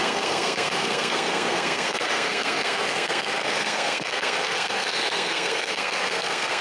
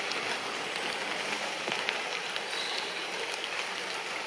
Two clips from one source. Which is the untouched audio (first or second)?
second